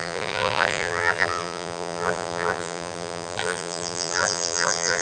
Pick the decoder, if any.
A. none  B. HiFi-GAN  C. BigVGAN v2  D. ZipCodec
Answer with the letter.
C